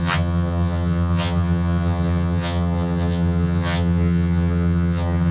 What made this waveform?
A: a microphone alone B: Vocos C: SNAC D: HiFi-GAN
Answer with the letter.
D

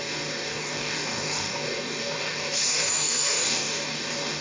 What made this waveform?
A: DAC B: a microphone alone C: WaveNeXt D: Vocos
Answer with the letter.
A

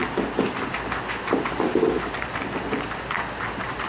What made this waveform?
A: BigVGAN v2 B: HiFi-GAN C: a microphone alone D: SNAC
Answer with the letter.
C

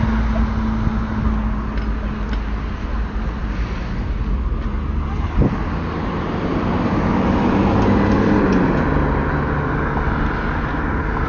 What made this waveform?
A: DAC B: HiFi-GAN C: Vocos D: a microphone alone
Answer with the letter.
D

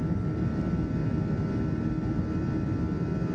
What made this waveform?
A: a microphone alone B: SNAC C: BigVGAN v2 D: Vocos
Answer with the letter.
A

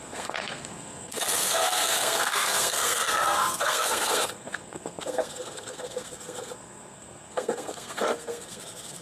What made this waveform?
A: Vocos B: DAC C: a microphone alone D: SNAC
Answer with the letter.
D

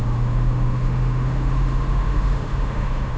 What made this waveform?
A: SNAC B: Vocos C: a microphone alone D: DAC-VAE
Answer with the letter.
D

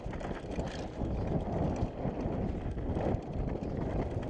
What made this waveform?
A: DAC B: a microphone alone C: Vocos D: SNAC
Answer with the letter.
B